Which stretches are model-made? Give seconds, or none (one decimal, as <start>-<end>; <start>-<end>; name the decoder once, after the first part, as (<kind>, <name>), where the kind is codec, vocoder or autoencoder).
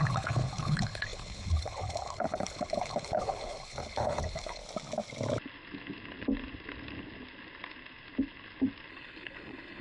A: 0.0-4.6 (codec, HILCodec); 8.9-9.8